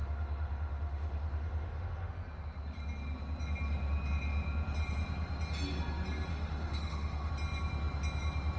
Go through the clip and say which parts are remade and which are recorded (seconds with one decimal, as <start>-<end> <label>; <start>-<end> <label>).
0.0-2.1 remade; 2.1-6.3 recorded; 6.3-7.3 remade; 7.3-8.6 recorded